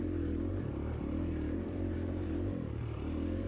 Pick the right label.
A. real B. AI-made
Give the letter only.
B